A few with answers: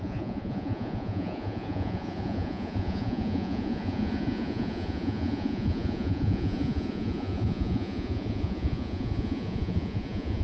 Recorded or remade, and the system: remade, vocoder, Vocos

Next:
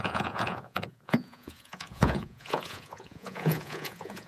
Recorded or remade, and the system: remade, vocoder, Vocos